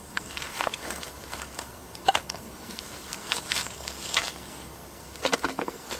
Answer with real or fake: fake